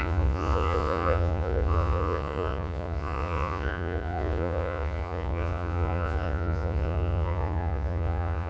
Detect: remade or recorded remade